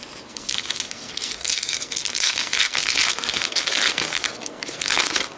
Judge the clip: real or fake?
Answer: fake